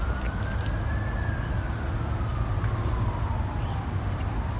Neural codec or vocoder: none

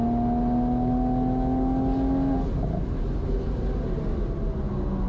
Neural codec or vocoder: none